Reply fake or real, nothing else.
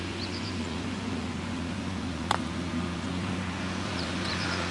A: fake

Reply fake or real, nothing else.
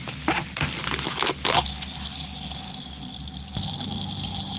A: real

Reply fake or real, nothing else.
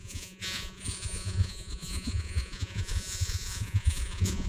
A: fake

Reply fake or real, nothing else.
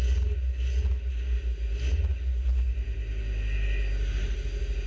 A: real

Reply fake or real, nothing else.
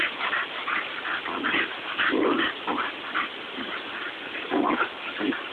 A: real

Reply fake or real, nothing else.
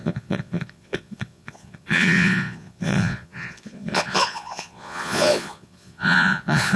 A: fake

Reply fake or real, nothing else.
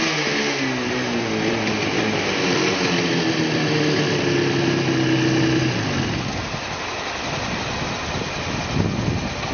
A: real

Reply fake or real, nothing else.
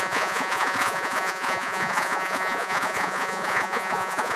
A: fake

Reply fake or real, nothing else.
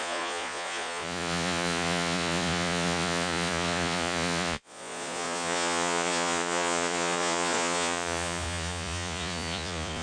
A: fake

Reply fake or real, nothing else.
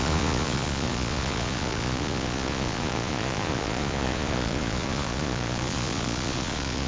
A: fake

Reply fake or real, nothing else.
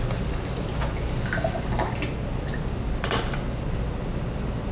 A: real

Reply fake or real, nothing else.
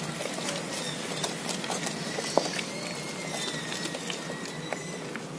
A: real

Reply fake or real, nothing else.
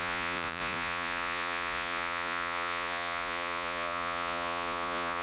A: fake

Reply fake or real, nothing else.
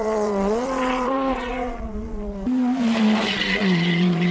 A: fake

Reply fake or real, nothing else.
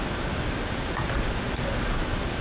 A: real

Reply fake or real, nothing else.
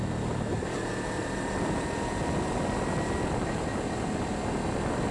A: real